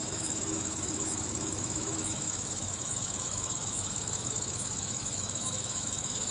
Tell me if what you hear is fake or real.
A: fake